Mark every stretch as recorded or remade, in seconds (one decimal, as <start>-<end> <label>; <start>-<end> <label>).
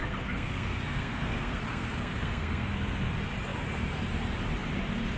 0.0-3.1 remade; 3.1-5.2 recorded